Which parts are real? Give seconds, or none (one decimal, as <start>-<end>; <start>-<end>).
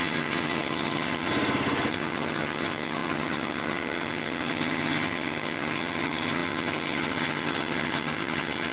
1.3-1.9